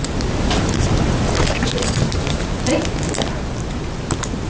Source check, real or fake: real